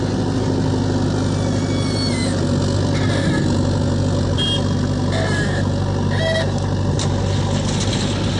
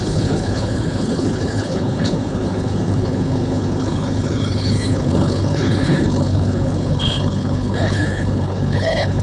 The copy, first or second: second